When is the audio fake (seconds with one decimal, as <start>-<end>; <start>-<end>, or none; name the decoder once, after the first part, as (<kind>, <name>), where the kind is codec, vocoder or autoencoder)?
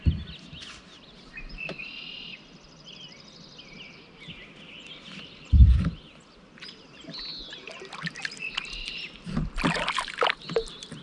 none